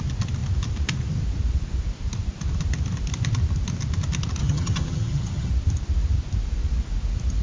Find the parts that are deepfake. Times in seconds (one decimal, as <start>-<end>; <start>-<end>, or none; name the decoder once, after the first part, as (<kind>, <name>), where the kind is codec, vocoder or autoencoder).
4.4-5.5 (vocoder, HiFi-GAN)